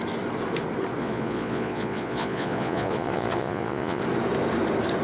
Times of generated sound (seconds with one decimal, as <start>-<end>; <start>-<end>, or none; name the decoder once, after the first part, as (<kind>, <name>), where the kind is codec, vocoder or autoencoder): 1.0-4.0 (vocoder, Vocos)